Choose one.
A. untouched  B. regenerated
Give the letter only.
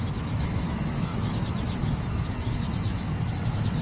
B